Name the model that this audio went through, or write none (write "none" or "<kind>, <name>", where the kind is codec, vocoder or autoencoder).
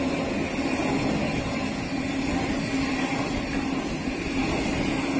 none